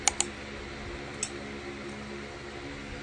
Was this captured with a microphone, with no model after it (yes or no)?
yes